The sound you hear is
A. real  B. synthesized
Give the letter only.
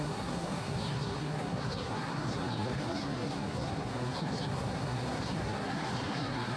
B